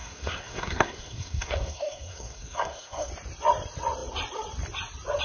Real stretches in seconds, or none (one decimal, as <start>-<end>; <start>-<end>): 3.1-5.2